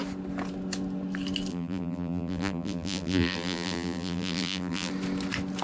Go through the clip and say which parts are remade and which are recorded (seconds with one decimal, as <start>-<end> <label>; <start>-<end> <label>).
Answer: 0.0-1.5 recorded; 1.5-4.9 remade; 4.9-5.6 recorded